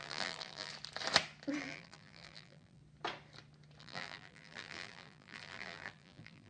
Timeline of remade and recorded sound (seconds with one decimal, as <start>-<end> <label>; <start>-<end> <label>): 0.0-0.7 remade; 0.7-1.6 recorded; 1.6-2.8 remade; 2.8-3.8 recorded; 3.8-6.5 remade